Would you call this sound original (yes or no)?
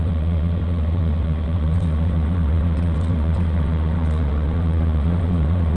no